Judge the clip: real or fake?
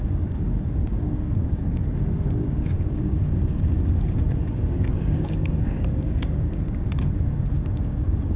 fake